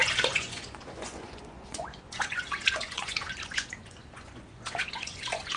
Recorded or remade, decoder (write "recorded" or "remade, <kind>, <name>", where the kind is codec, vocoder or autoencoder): remade, vocoder, Vocos